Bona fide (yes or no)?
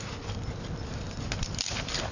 yes